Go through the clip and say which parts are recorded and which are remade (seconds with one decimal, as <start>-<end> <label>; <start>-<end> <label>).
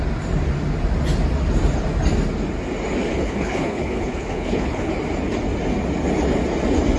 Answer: 0.0-3.1 recorded; 3.1-4.9 remade; 4.9-7.0 recorded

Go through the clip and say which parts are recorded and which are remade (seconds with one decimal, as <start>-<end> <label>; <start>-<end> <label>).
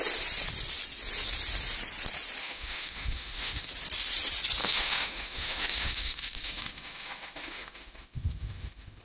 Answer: 0.0-2.4 recorded; 2.4-3.7 remade; 3.7-4.6 recorded; 4.6-9.0 remade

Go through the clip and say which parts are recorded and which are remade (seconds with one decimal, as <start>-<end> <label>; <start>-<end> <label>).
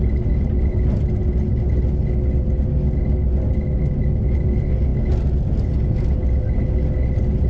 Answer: 0.0-7.5 recorded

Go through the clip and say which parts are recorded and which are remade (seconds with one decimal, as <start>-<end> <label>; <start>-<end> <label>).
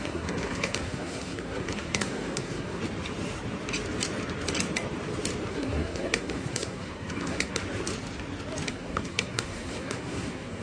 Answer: 0.0-2.8 remade; 2.8-5.5 recorded; 5.5-7.6 remade; 7.6-8.7 recorded; 8.7-10.6 remade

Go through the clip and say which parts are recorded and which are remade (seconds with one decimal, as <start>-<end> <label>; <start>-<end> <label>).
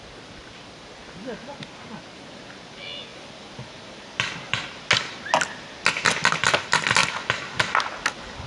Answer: 0.0-3.1 recorded; 3.1-4.6 remade; 4.6-8.5 recorded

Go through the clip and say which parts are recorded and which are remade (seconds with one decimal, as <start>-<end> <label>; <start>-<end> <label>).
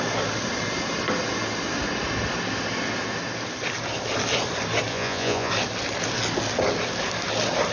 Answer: 0.0-4.9 recorded; 4.9-5.5 remade; 5.5-7.7 recorded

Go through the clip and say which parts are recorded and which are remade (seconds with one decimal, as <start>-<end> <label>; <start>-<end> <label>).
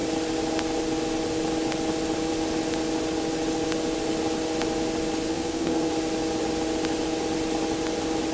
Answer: 0.0-5.3 recorded; 5.3-5.9 remade; 5.9-8.3 recorded